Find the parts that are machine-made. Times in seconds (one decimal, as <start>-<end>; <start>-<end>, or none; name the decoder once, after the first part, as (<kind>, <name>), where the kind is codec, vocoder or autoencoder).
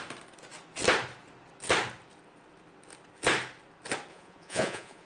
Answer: 4.1-5.1 (vocoder, Vocos)